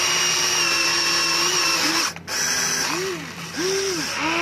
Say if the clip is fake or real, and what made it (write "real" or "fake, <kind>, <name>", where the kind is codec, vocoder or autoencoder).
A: real